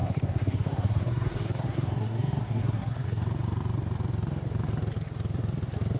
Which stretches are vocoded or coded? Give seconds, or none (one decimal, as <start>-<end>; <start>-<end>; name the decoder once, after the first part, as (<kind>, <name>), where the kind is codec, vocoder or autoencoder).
0.0-3.2 (codec, SNAC)